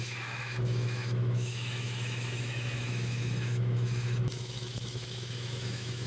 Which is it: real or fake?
fake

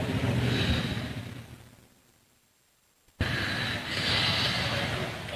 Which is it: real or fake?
real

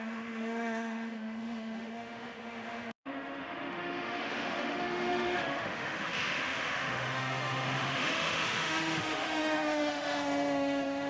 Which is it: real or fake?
fake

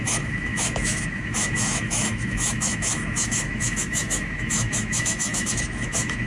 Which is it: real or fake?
fake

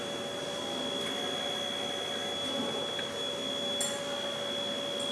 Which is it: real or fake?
real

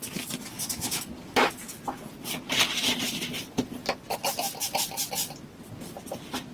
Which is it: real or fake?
real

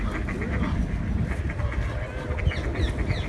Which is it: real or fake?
real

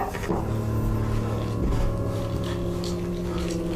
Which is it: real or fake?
real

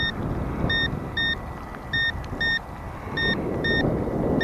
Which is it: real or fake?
real